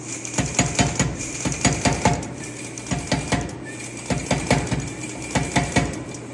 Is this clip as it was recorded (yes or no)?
yes